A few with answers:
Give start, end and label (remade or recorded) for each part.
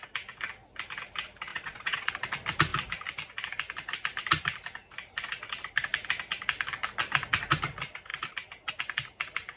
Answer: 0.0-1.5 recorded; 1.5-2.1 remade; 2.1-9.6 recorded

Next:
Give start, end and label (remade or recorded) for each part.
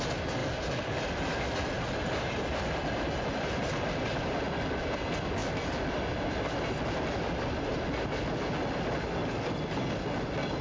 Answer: 0.0-10.6 recorded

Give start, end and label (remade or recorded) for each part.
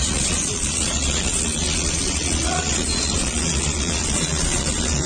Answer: 0.0-5.1 remade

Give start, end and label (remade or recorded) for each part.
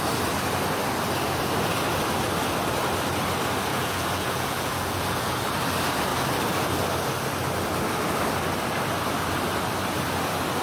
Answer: 0.0-3.7 recorded; 3.7-5.4 remade; 5.4-10.6 recorded